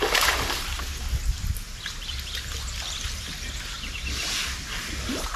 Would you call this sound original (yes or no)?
yes